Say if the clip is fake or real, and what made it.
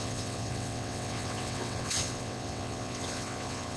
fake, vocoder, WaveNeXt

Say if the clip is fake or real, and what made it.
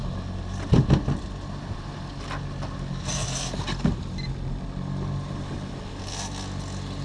real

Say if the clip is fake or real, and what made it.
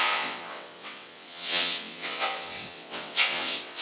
fake, vocoder, WaveNeXt